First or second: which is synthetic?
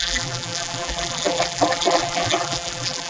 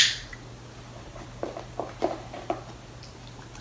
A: first